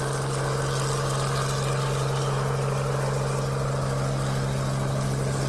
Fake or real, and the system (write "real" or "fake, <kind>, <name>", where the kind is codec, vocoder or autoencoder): real